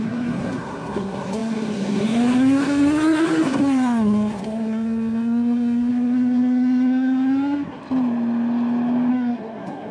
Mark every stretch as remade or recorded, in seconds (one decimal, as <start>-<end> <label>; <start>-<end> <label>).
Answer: 0.0-7.8 remade; 7.8-9.1 recorded; 9.1-9.9 remade

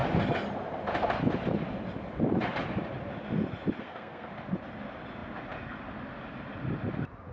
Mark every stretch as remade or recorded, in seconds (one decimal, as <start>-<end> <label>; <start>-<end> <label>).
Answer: 0.0-3.8 recorded; 3.8-4.3 remade; 4.3-7.3 recorded

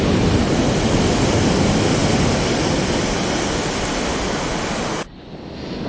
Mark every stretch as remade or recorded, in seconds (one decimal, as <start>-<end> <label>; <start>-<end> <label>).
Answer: 0.0-5.9 recorded

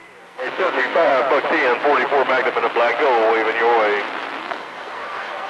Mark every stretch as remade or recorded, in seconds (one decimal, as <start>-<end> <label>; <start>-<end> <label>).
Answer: 0.0-1.1 remade; 1.1-4.4 recorded; 4.4-5.5 remade

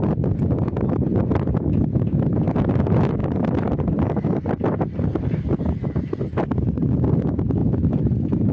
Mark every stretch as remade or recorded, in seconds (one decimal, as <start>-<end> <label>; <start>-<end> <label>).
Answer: 0.0-8.5 recorded